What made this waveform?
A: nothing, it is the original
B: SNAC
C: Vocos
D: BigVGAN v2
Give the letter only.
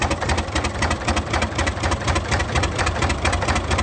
D